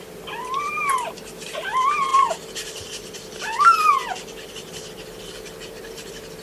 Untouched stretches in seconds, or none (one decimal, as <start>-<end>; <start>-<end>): 2.1-5.9